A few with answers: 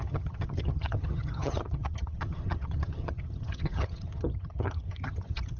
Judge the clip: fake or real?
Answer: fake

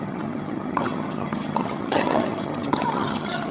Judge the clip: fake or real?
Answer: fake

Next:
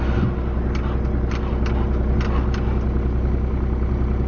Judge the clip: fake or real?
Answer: real